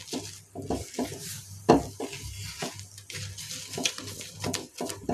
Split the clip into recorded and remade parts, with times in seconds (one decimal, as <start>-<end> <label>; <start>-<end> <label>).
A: 0.0-1.2 recorded; 1.2-1.7 remade; 1.7-5.1 recorded

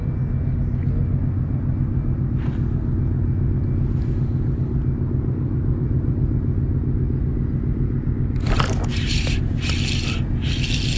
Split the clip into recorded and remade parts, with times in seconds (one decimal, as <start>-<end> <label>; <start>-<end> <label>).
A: 0.0-8.9 recorded; 8.9-9.7 remade; 9.7-11.0 recorded

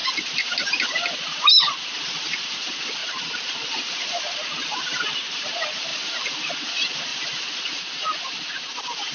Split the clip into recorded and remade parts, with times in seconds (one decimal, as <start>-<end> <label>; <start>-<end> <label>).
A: 0.0-0.5 remade; 0.5-3.0 recorded; 3.0-4.2 remade; 4.2-5.9 recorded; 5.9-6.5 remade; 6.5-7.1 recorded; 7.1-8.4 remade; 8.4-9.1 recorded